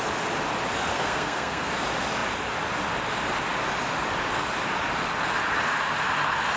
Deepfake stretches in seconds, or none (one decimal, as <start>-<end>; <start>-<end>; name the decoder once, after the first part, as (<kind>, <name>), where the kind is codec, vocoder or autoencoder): 0.8-1.7 (codec, SNAC)